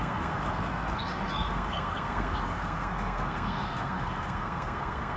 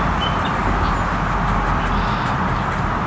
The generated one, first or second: first